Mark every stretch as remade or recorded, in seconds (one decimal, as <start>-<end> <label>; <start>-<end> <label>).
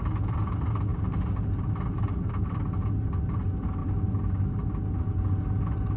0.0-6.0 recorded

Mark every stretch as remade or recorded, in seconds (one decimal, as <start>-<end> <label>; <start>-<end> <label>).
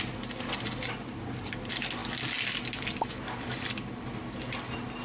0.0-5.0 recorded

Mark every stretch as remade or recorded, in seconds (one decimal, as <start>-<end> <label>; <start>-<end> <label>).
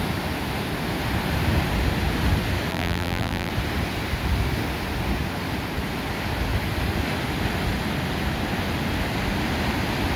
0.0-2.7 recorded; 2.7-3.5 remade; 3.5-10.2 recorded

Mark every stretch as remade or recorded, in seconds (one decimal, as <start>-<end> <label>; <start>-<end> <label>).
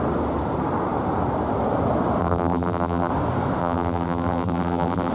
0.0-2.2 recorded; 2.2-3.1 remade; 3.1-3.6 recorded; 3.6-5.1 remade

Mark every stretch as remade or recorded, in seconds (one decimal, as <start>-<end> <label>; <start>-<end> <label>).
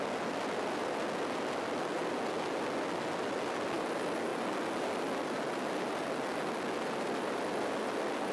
0.0-8.3 recorded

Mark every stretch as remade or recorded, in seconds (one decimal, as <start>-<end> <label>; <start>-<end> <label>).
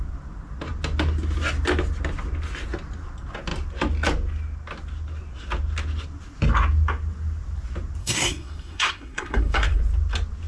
0.0-8.0 recorded; 8.0-9.8 remade; 9.8-10.5 recorded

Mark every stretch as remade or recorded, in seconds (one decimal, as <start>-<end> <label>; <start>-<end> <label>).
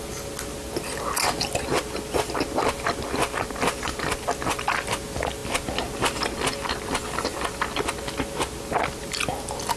0.0-9.8 recorded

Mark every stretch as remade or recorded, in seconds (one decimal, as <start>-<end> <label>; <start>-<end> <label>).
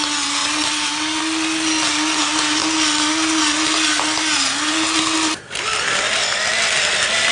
0.0-7.3 recorded